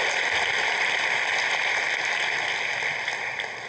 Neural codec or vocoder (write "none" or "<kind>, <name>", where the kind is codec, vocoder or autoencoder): none